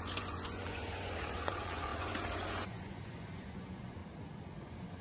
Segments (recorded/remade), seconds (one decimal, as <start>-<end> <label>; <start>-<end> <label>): 0.0-4.0 remade; 4.0-4.6 recorded; 4.6-5.0 remade